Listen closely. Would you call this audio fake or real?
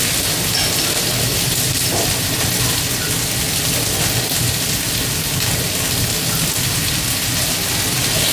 real